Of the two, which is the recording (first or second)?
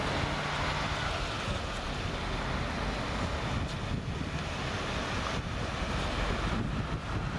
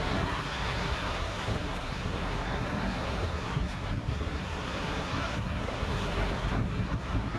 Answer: first